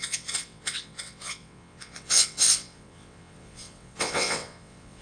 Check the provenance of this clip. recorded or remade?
remade